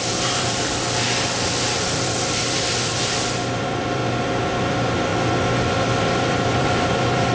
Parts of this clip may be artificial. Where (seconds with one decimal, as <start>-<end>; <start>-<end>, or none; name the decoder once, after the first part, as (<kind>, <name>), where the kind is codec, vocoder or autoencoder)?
0.0-4.0 (vocoder, BigVGAN v2); 4.6-7.3